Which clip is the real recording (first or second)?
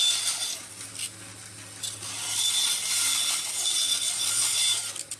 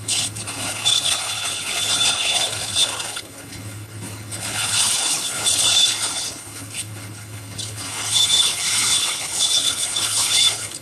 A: first